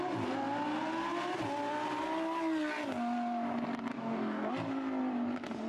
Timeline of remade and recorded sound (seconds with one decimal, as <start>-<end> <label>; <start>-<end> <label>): 0.0-3.9 recorded; 3.9-4.5 remade; 4.5-5.7 recorded